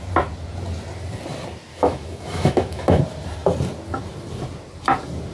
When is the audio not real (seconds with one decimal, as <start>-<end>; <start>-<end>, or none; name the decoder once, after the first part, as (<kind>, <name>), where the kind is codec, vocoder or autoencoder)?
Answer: 1.7-3.0 (autoencoder, DAC-VAE)